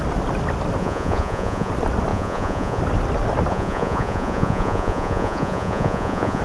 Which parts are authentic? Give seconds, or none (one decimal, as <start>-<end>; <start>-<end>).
0.0-0.8; 1.7-2.1; 2.8-3.5